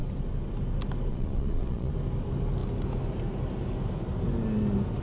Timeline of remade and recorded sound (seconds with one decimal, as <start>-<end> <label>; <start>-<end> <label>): 0.0-1.1 recorded; 1.1-1.9 remade; 1.9-5.0 recorded